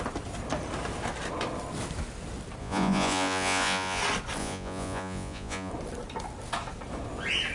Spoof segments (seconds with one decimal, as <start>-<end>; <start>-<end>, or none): 2.6-4.0; 4.4-5.7